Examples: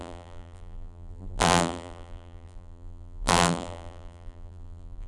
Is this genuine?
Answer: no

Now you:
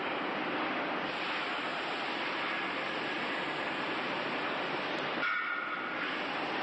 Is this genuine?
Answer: yes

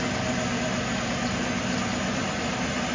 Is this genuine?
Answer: yes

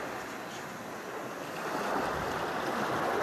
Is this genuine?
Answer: yes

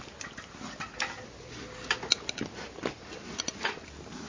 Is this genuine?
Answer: yes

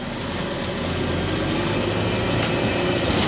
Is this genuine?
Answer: yes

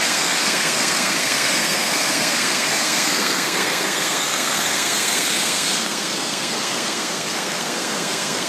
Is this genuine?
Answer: no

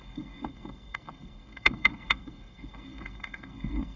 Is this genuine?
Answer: no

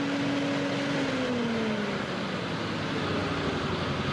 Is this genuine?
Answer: yes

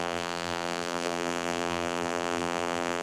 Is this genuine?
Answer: no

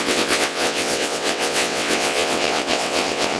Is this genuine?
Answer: no